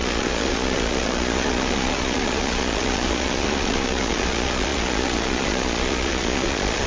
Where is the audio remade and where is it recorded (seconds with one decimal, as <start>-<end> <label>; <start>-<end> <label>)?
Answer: 0.0-6.9 remade